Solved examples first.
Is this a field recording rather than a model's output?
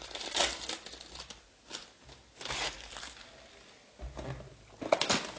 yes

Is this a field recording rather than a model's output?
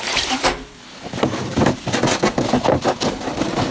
yes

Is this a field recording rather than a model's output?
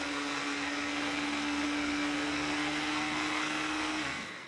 no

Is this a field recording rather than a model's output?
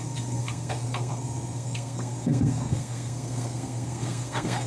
no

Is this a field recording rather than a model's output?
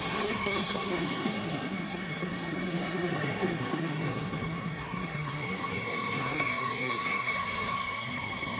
no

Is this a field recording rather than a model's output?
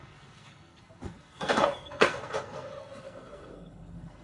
no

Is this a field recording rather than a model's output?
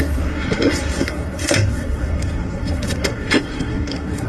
no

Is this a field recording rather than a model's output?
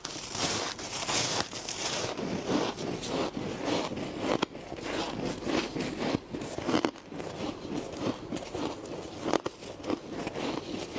yes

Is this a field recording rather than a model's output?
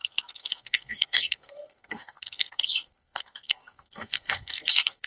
no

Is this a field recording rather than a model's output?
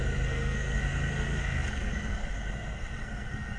no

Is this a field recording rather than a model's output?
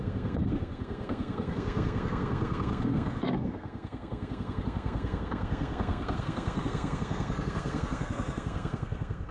no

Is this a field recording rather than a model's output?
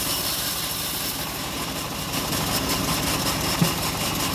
yes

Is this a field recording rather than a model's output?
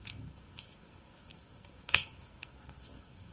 no